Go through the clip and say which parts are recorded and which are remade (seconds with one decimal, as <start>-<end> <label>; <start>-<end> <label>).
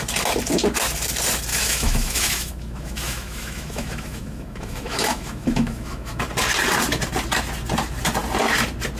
0.0-1.5 recorded; 1.5-6.2 remade; 6.2-9.0 recorded